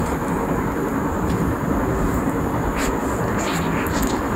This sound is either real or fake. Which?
real